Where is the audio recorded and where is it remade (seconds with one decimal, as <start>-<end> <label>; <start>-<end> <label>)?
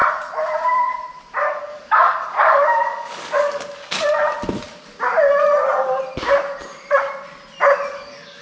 0.0-1.4 recorded; 1.4-4.3 remade; 4.3-7.9 recorded; 7.9-8.4 remade